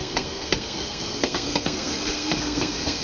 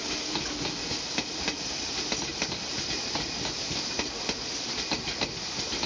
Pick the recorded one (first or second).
second